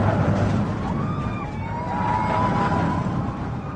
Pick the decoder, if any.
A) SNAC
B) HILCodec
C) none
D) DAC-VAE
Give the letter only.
C